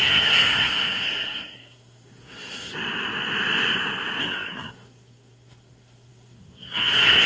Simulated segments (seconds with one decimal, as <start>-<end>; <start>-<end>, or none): 0.0-2.7; 4.2-7.3